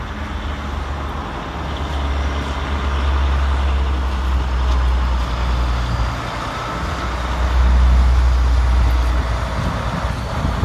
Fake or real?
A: real